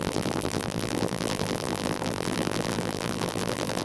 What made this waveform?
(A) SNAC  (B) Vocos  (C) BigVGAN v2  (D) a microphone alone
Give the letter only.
C